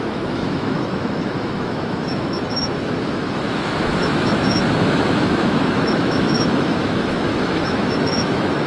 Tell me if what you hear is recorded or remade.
remade